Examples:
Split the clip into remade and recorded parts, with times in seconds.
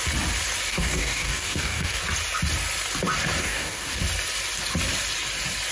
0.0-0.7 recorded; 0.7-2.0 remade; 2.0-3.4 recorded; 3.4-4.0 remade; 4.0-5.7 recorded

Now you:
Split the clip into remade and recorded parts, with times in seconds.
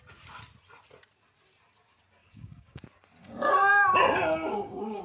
0.0-2.2 recorded; 2.2-2.8 remade; 2.8-3.2 recorded; 3.2-5.0 remade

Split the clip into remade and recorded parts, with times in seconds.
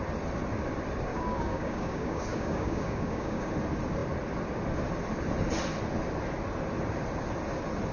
0.0-1.1 recorded; 1.1-3.5 remade; 3.5-7.9 recorded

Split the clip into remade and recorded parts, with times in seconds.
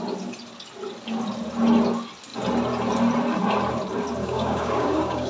0.0-4.2 recorded; 4.2-5.3 remade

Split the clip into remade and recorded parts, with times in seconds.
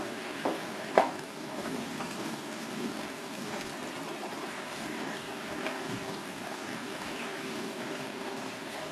0.0-3.7 remade; 3.7-4.5 recorded; 4.5-8.9 remade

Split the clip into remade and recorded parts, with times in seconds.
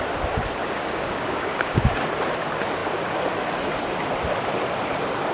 0.0-0.6 recorded; 0.6-2.1 remade; 2.1-5.3 recorded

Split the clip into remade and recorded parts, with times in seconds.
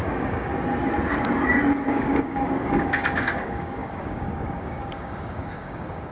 0.0-0.5 remade; 0.5-1.9 recorded; 1.9-6.1 remade